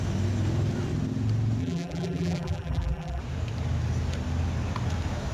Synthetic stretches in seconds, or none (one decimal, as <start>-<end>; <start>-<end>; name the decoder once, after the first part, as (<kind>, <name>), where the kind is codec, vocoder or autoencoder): 1.6-3.2 (vocoder, BigVGAN v2)